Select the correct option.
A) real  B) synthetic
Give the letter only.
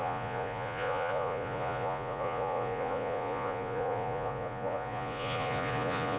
B